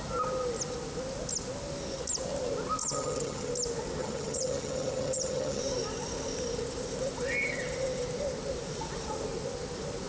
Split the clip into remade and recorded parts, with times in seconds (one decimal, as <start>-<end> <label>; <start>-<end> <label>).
0.0-2.8 recorded; 2.8-3.5 remade; 3.5-4.0 recorded; 4.0-5.6 remade; 5.6-10.1 recorded